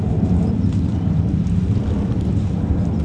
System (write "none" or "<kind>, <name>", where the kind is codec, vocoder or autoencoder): none